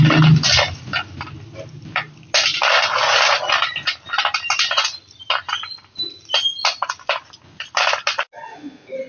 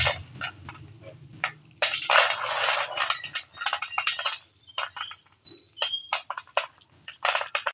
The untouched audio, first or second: first